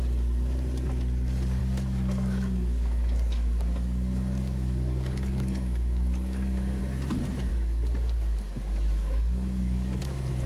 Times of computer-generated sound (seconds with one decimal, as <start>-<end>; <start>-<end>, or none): 1.6-6.8; 7.5-10.0